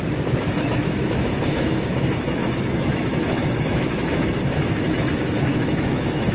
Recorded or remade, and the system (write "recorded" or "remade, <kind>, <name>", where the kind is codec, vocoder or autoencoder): remade, autoencoder, DAC-VAE